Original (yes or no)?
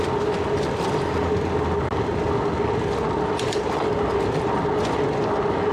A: yes